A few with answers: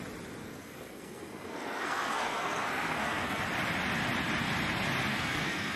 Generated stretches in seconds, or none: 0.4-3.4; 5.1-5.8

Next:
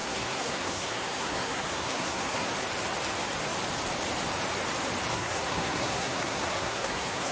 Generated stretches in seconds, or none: 0.0-2.5; 5.1-7.3

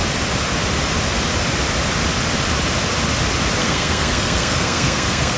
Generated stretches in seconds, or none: 3.6-5.4